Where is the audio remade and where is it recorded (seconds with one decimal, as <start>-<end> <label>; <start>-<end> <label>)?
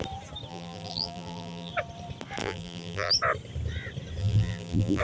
0.0-0.5 recorded; 0.5-1.7 remade; 1.7-2.4 recorded; 2.4-3.1 remade; 3.1-4.2 recorded; 4.2-5.0 remade